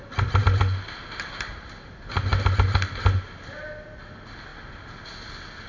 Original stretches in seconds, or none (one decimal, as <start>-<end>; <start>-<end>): 0.0-5.7